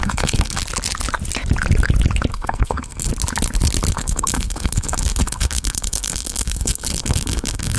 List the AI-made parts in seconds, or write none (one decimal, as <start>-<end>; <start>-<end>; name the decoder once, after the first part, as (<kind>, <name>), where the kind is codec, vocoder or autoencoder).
0.0-0.6 (codec, SNAC); 2.3-3.1; 3.9-7.8